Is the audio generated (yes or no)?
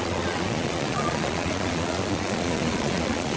yes